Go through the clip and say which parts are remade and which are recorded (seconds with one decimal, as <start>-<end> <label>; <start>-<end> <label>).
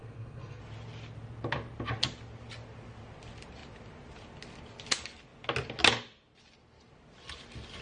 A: 0.0-0.6 remade; 0.6-7.8 recorded